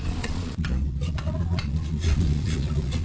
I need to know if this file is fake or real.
fake